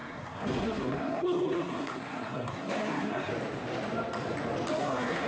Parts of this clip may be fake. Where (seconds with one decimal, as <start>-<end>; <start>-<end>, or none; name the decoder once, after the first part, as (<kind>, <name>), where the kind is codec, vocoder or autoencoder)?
0.0-3.3 (codec, SNAC); 4.8-5.3